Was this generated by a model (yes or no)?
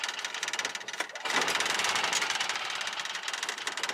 no